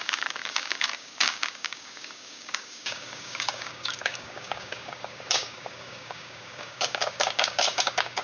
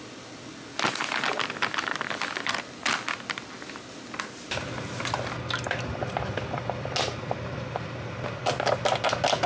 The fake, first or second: first